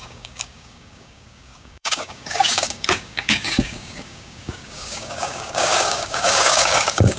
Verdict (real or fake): fake